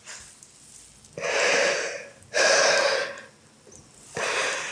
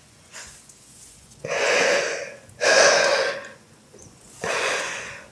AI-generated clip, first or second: second